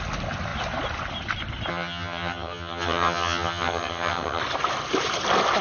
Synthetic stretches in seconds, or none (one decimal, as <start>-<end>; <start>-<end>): 1.7-4.4